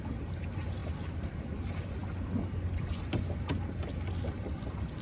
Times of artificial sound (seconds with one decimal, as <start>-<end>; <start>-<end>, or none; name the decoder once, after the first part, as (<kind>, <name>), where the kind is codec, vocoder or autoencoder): 0.8-1.5 (vocoder, BigVGAN v2)